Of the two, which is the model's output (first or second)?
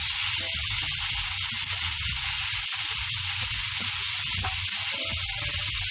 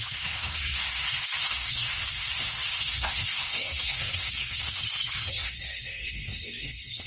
second